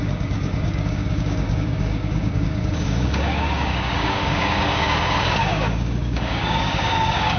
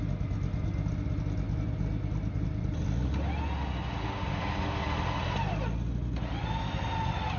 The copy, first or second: first